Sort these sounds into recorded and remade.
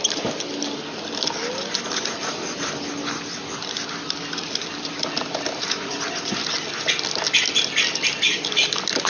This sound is recorded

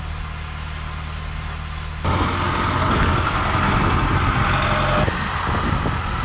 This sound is recorded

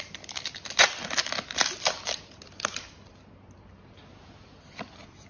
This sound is recorded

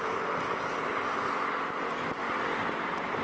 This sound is recorded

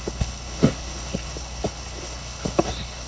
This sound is remade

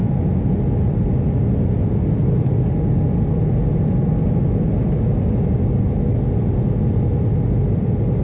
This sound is recorded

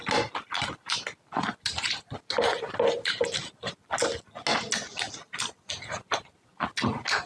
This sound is recorded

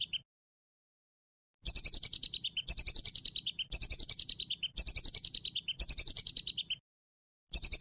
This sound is recorded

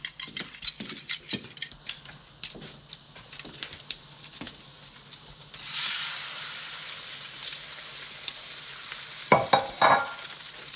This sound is recorded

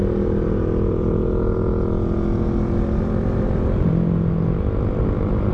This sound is recorded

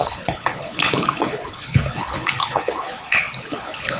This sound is remade